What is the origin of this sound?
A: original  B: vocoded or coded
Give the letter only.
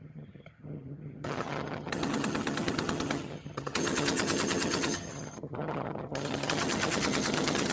B